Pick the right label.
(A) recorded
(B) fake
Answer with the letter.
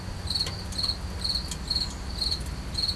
A